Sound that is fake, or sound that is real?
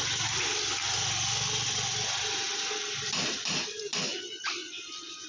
real